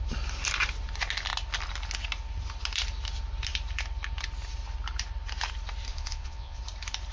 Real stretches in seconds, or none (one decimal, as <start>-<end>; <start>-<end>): 0.0-5.9; 6.6-7.1

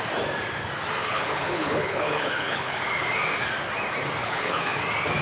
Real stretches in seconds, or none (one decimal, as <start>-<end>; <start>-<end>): 0.0-1.0; 2.8-4.2; 4.8-5.2

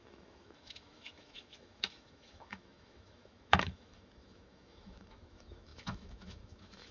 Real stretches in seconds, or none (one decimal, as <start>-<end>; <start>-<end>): none

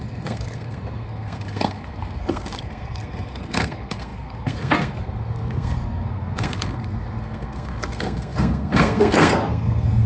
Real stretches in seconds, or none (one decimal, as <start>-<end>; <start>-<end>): none

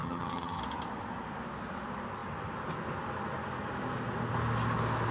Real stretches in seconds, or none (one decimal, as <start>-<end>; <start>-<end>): 0.6-5.1

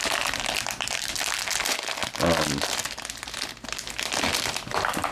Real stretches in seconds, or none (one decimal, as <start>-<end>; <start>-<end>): 0.0-5.1

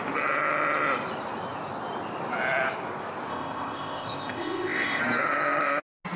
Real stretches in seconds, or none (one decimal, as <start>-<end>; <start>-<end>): 0.0-3.3; 5.0-6.2